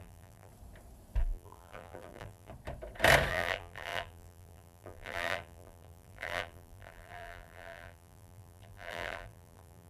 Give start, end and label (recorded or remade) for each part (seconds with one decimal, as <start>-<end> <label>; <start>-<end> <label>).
0.0-0.5 remade; 0.5-1.2 recorded; 1.2-2.5 remade; 2.5-3.3 recorded; 3.3-9.9 remade